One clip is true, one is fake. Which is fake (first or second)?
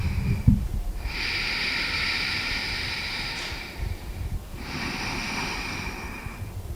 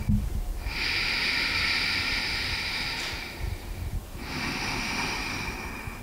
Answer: first